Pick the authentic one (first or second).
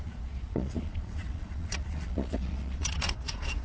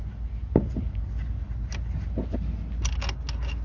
second